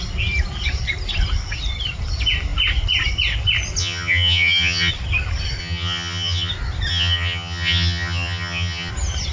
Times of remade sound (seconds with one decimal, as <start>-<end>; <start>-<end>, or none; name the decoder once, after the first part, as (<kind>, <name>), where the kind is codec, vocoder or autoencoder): 3.8-4.9 (vocoder, HiFi-GAN); 5.6-6.5; 6.9-8.9